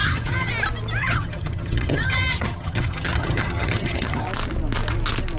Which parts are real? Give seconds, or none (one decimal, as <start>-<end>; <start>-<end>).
0.5-1.0; 4.2-5.4